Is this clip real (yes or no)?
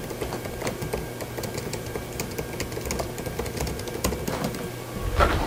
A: yes